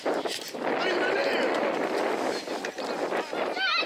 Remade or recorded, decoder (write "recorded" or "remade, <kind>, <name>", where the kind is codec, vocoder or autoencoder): recorded